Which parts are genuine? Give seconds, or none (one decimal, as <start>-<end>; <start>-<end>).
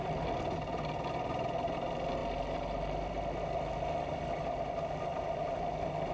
0.0-6.1